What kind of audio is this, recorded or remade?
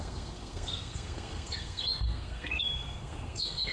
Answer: remade